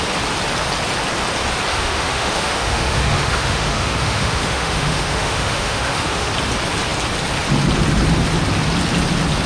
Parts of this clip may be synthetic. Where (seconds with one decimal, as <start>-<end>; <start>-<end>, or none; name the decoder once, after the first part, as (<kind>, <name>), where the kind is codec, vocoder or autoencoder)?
1.7-6.3 (autoencoder, DAC-VAE)